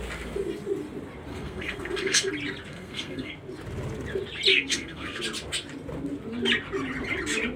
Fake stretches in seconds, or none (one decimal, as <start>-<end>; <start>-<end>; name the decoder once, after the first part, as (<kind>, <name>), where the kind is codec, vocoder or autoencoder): 1.3-2.3 (codec, SNAC); 2.7-3.3; 4.5-5.2